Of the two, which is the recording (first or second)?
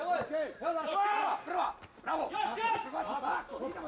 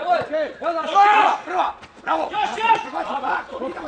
first